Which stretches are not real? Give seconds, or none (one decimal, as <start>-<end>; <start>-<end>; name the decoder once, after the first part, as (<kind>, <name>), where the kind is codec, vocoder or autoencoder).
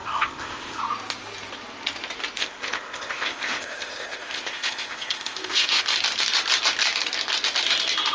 0.0-0.8 (codec, ZipCodec); 2.4-5.8